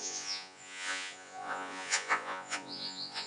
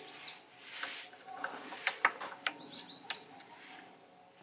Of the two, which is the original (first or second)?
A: second